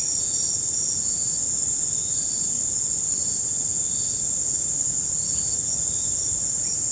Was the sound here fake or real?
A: fake